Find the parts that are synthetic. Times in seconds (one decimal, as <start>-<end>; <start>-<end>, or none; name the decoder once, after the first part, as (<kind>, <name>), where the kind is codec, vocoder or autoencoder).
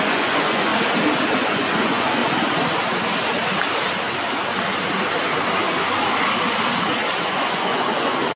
0.0-0.7 (vocoder, Vocos); 1.4-2.2; 7.2-8.4